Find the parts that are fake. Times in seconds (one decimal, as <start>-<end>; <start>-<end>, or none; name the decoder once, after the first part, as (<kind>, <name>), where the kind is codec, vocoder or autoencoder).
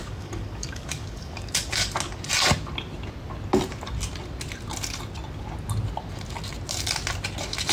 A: 0.0-1.9 (codec, DAC)